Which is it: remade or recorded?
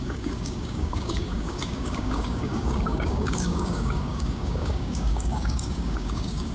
remade